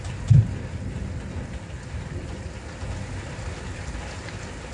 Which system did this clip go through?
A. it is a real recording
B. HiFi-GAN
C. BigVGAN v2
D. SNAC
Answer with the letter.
A